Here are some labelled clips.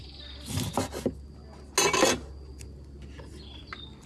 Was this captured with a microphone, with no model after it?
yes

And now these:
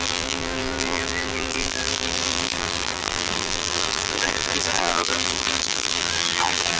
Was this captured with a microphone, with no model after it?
no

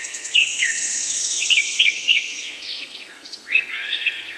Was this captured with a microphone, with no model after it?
no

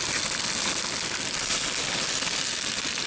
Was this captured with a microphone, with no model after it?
yes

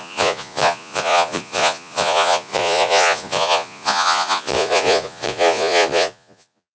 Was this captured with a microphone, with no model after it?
no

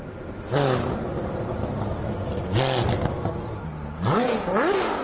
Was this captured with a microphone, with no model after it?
yes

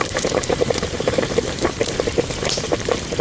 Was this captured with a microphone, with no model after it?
no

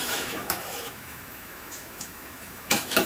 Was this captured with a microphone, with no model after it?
no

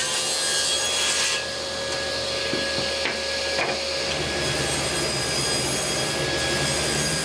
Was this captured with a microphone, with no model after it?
yes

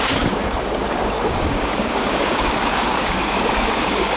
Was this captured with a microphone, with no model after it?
no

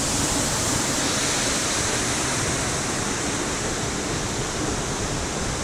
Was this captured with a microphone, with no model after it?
yes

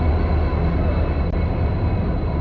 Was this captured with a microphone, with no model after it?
yes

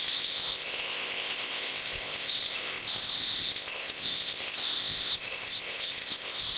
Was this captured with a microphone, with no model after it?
no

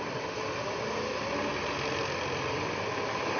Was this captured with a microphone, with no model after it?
yes